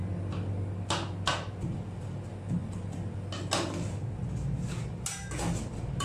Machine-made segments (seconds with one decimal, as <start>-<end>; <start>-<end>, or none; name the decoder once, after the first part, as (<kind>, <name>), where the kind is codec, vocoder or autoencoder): none